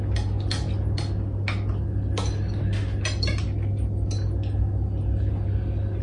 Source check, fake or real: real